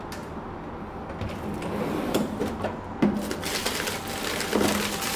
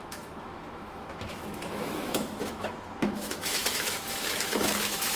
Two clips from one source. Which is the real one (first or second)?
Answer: first